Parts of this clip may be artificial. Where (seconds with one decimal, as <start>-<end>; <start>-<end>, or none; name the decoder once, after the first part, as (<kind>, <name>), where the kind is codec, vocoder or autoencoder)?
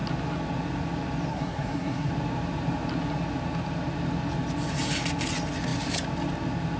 1.3-2.1 (codec, SNAC)